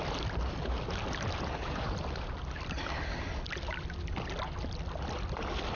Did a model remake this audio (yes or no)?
no